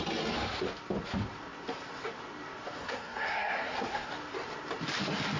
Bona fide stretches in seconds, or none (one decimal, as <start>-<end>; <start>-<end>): 0.0-2.8; 4.1-5.4